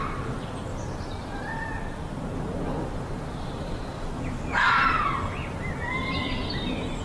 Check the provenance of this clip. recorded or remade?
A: remade